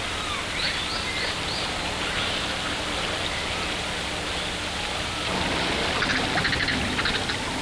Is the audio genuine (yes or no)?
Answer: yes